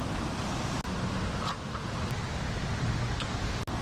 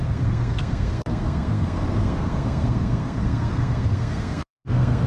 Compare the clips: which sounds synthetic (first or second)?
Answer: second